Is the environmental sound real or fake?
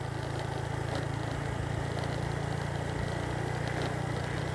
real